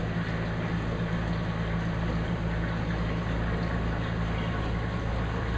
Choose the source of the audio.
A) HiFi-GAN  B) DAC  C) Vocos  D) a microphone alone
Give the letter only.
D